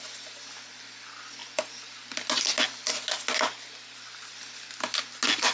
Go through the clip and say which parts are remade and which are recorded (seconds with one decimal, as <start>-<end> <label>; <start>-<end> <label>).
0.0-5.5 recorded